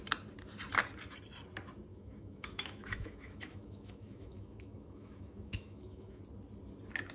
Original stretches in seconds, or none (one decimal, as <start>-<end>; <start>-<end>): 0.0-1.9; 6.2-7.1